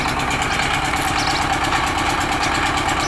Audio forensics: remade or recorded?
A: recorded